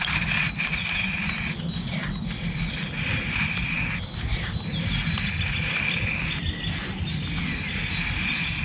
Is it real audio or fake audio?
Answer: real